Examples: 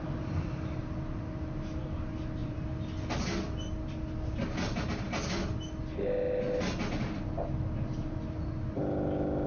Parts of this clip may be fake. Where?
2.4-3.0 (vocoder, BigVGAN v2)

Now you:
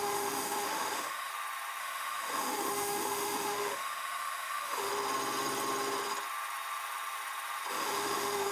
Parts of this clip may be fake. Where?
0.0-1.3 (autoencoder, DAC-VAE); 1.8-4.9; 7.7-8.5